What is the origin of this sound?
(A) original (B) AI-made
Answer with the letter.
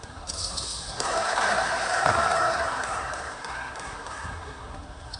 B